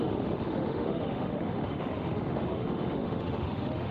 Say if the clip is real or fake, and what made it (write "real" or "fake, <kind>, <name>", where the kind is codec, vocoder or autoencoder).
fake, autoencoder, DAC-VAE